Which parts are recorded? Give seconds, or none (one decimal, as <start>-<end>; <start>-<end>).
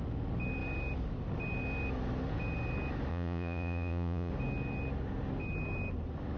0.0-3.1; 4.3-6.4